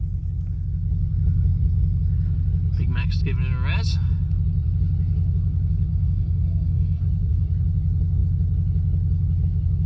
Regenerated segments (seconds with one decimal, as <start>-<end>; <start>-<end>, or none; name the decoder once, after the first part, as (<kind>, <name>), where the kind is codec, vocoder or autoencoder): 5.9-7.0 (codec, SNAC)